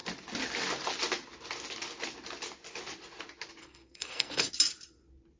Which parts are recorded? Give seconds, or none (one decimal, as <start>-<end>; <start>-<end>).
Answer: 0.0-3.6; 4.5-5.4